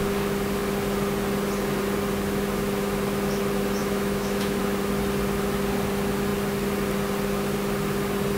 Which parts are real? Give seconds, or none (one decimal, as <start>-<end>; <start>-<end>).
0.0-3.8; 4.6-8.4